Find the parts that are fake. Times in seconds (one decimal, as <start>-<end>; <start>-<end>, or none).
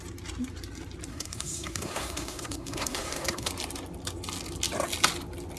1.1-3.5